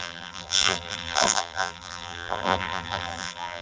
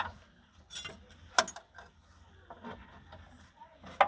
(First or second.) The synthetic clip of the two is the first